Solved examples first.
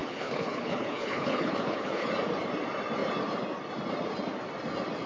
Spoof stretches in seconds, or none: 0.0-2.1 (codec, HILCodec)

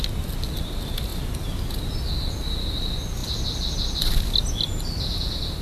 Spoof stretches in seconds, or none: none

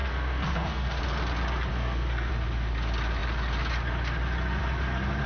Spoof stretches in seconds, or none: 0.0-1.0 (codec, SNAC); 1.7-2.3

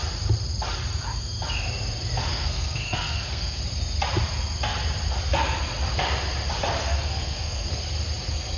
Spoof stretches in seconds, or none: 2.3-3.6 (codec, SNAC); 6.9-7.7

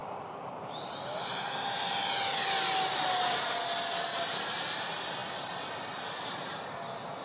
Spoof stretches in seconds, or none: none

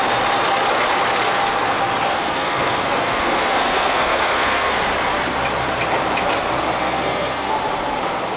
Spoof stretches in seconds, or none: 2.1-4.9 (codec, SNAC); 6.8-7.5

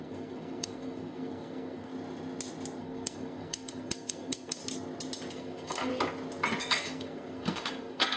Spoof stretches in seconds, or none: 0.0-1.9 (codec, SNAC); 2.8-4.6; 5.3-5.9; 6.6-8.2